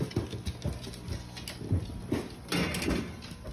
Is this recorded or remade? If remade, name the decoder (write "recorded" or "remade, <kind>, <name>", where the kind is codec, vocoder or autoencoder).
recorded